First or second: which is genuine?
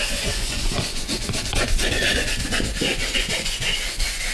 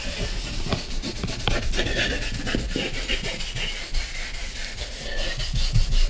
second